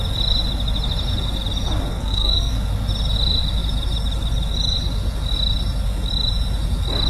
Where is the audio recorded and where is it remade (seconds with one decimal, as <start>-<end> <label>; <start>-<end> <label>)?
0.0-1.9 recorded; 1.9-2.5 remade; 2.5-7.1 recorded